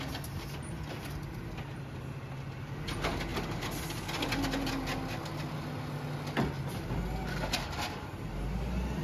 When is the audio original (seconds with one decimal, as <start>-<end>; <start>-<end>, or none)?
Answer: 0.0-9.0